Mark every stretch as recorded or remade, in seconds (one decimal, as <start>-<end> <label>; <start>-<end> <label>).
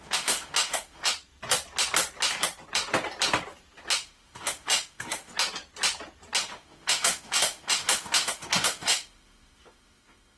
0.0-1.1 remade; 1.1-4.0 recorded; 4.0-5.3 remade; 5.3-6.4 recorded; 6.4-10.4 remade